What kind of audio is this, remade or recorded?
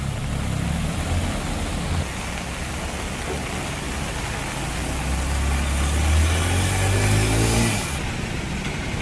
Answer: recorded